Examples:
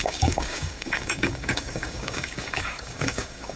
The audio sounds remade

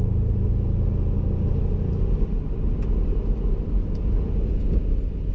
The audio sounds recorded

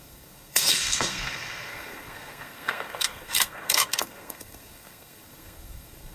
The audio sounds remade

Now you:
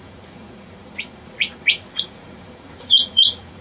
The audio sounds remade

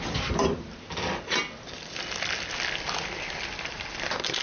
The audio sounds recorded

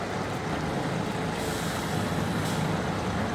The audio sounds recorded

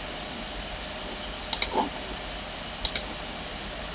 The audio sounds recorded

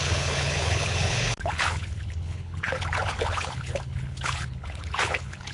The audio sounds remade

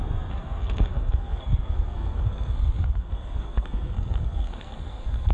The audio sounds remade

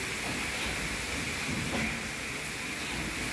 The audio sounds recorded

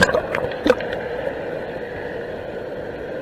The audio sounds recorded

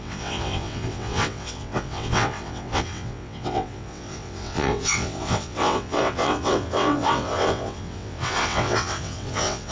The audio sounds remade